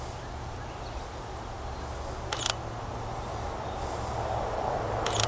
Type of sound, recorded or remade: recorded